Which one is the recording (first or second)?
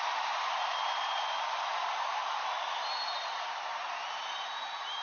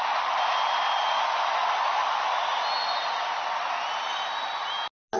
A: second